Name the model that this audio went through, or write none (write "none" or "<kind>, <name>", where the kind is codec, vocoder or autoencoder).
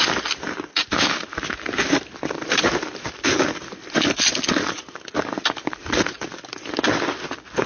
none